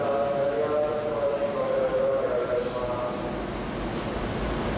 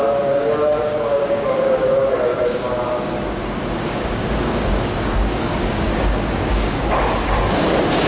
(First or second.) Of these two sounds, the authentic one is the first